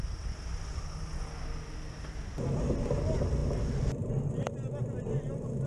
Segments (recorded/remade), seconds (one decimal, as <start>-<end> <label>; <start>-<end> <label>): 0.0-5.7 recorded